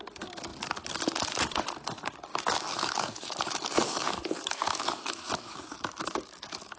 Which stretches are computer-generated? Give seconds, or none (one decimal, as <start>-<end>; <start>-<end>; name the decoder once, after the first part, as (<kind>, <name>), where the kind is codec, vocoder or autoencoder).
2.3-6.8 (autoencoder, DAC-VAE)